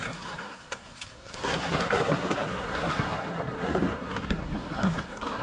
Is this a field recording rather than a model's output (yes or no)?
no